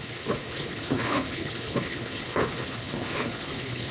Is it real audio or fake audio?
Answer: fake